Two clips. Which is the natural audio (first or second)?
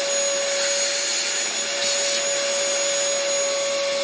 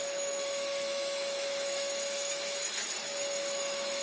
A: first